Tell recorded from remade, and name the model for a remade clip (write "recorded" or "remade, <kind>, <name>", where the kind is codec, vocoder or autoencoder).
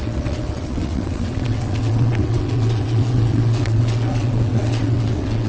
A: remade, vocoder, WaveNeXt